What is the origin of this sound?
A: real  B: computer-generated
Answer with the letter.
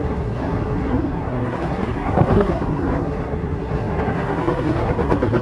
B